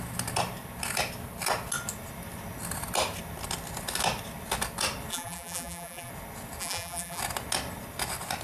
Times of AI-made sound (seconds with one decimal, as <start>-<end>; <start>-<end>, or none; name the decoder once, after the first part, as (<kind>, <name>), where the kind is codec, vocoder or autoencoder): 5.1-6.1 (vocoder, BigVGAN v2); 6.6-7.2